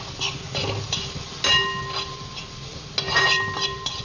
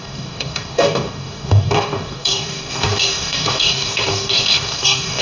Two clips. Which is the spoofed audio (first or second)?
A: second